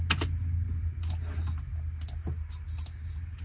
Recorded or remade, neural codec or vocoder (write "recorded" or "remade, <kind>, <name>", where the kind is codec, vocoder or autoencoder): recorded